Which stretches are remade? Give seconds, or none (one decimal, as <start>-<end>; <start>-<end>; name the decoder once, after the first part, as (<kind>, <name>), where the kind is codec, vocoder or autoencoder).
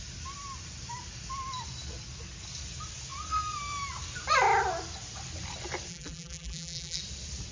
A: 5.9-7.0 (vocoder, BigVGAN v2)